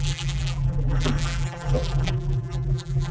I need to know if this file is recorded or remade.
remade